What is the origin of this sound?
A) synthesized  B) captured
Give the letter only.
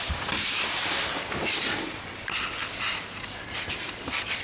A